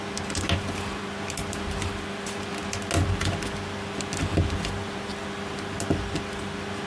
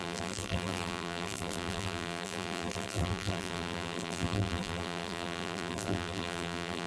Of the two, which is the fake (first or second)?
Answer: second